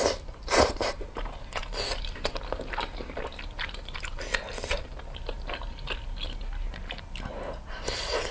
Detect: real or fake real